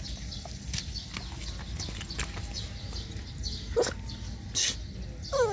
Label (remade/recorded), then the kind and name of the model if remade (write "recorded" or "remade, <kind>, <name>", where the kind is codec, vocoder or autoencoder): recorded